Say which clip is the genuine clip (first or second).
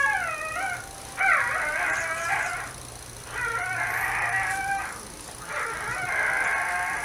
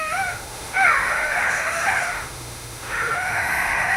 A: first